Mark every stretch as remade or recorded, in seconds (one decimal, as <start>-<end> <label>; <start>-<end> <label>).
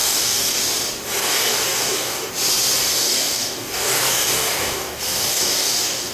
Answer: 0.0-0.6 remade; 0.6-1.2 recorded; 1.2-2.3 remade; 2.3-2.8 recorded; 2.8-6.1 remade